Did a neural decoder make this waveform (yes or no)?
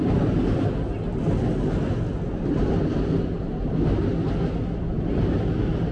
no